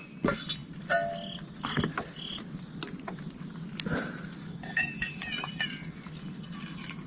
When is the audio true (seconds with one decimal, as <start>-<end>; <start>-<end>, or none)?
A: 0.0-4.4; 5.2-7.1